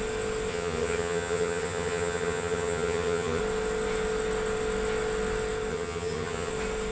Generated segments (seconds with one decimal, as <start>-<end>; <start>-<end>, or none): 0.5-3.4; 5.7-6.5